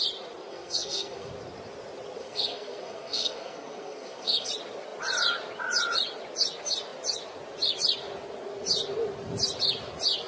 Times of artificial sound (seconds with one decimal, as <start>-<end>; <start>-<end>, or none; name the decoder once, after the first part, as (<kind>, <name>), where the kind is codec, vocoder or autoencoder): 0.5-1.3 (codec, SNAC); 2.2-4.5